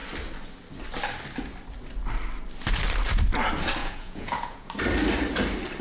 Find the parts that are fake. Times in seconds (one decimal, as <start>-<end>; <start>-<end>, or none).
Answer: 3.8-4.7